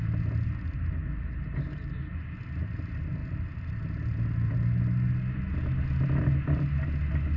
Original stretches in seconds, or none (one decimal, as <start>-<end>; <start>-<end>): 0.0-7.4